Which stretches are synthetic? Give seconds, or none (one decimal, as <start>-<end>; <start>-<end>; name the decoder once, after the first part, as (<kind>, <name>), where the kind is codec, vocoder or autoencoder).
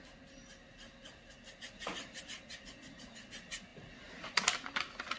none